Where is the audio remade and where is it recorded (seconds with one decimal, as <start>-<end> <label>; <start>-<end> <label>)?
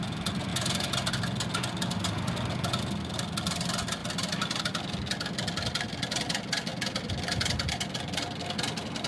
0.0-9.1 recorded